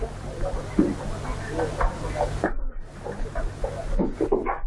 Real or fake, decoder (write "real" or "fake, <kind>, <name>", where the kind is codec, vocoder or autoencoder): real